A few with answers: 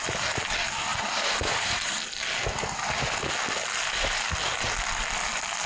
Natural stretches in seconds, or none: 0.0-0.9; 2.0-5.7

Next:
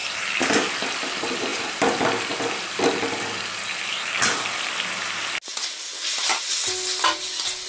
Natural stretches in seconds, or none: 0.0-1.5; 4.7-7.7

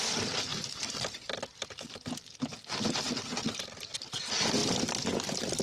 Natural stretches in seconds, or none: none

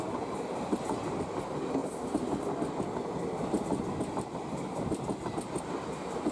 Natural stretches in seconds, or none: 0.0-6.3

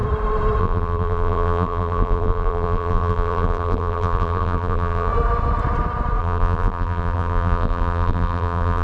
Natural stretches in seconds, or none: 0.0-0.6; 5.1-6.2